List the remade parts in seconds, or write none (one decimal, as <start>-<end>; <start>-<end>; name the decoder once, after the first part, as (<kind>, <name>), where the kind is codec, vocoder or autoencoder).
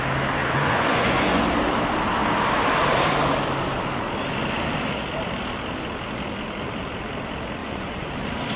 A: 0.4-1.4 (vocoder, Vocos); 7.6-8.1